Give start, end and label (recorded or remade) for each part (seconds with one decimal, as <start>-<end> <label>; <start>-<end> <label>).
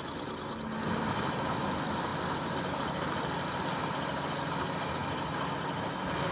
0.0-6.3 recorded